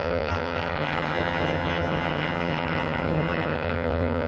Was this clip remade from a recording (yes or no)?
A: yes